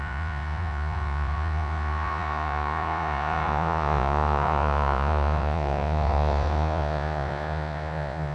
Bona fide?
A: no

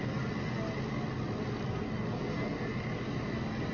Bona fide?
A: yes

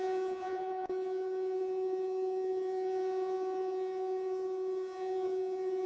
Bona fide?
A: no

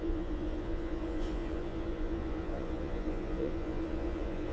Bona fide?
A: no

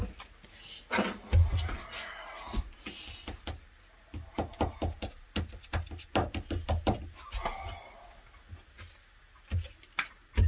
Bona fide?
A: yes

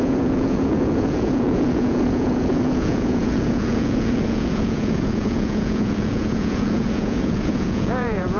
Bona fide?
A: no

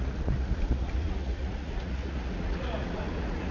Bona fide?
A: no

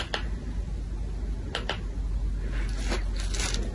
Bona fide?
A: yes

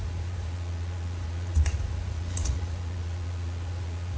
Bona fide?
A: no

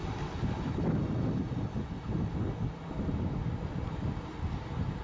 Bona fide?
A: yes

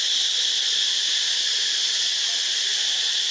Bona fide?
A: yes